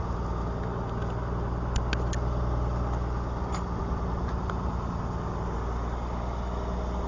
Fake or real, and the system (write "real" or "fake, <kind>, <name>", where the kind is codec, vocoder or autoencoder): real